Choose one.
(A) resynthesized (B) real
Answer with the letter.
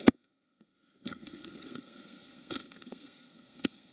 A